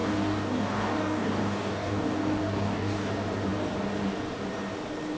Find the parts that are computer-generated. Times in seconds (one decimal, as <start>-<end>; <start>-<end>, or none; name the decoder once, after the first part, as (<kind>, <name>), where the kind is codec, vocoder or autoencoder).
0.0-3.1 (codec, DAC)